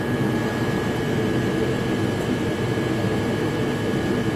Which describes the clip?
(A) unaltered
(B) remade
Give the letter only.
A